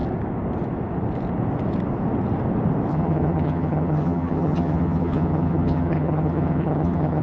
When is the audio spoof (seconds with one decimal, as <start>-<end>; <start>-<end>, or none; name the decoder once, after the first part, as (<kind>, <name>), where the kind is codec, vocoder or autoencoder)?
2.9-7.2 (vocoder, HiFi-GAN)